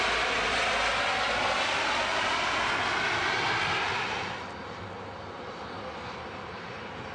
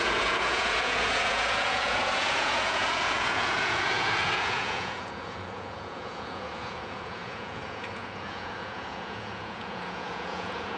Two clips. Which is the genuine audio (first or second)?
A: first